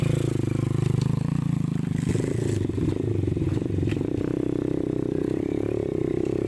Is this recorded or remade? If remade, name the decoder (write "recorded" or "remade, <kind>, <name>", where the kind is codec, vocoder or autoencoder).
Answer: remade, vocoder, BigVGAN v2